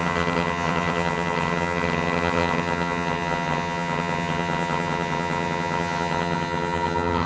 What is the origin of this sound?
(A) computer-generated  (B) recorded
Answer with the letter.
A